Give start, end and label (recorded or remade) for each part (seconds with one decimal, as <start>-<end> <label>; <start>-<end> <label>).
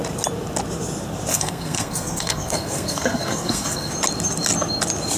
0.0-1.3 recorded; 1.3-3.9 remade; 3.9-5.2 recorded